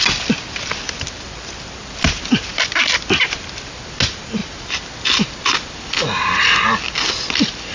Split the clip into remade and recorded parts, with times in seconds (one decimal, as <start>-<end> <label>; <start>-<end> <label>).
0.0-7.7 recorded